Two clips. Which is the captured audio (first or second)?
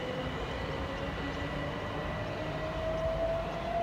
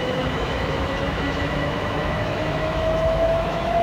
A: first